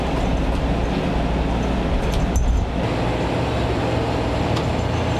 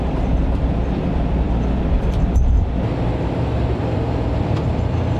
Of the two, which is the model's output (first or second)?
second